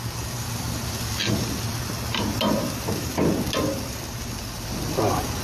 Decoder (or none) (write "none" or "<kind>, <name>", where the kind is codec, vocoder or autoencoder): none